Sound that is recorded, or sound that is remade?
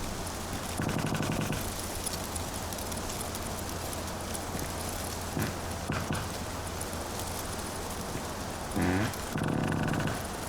recorded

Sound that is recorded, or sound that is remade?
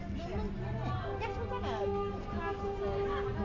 recorded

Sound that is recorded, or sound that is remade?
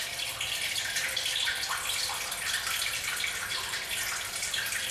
recorded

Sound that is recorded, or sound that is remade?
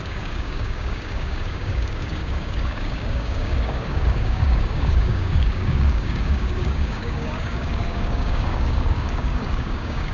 remade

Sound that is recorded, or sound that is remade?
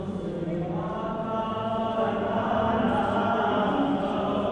recorded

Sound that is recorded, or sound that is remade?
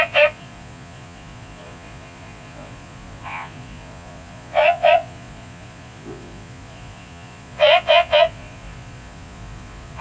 remade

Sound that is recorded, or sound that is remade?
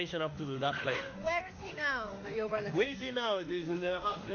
remade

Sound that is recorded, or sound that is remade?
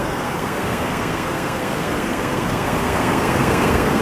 remade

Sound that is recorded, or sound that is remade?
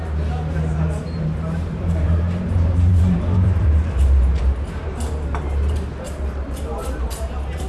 remade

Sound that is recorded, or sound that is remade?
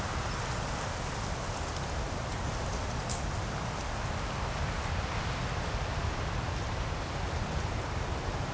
recorded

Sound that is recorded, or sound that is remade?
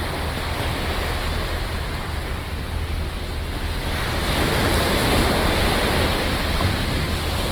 recorded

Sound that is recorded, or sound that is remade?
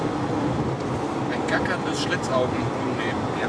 recorded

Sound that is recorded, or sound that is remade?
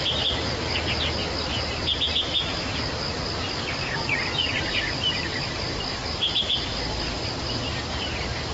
recorded